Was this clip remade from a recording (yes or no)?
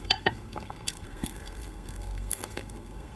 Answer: yes